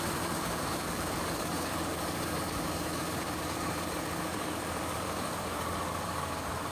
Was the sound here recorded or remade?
remade